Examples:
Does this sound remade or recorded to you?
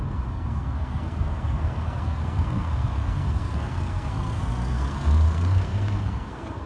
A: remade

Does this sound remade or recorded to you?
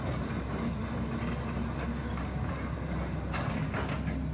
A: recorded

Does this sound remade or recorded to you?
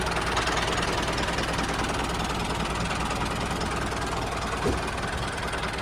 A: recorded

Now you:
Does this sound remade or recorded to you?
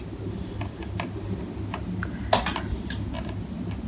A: recorded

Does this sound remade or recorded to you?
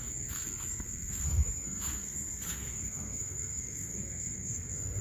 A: remade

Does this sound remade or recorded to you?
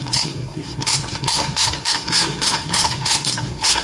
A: remade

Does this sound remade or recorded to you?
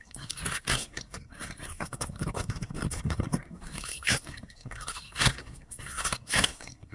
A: remade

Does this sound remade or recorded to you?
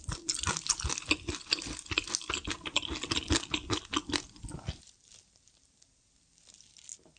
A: recorded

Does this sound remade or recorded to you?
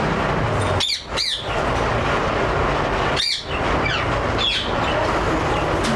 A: recorded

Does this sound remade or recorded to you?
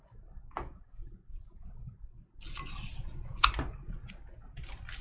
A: recorded